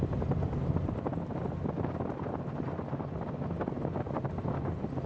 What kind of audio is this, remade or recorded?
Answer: recorded